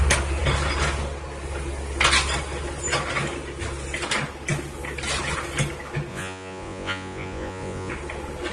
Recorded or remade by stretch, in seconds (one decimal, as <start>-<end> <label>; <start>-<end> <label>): 0.0-6.1 recorded; 6.1-7.9 remade; 7.9-8.5 recorded